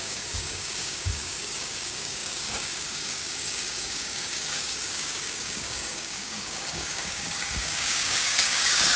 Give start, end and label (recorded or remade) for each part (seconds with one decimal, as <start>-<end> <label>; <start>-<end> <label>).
0.0-9.0 remade